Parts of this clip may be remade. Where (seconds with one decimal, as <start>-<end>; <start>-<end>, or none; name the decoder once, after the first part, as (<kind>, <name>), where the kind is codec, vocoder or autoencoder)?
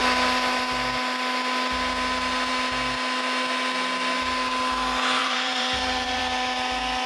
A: 5.2-6.2 (vocoder, BigVGAN v2)